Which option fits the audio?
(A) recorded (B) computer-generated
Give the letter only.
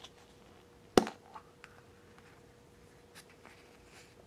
A